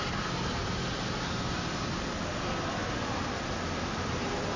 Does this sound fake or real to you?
real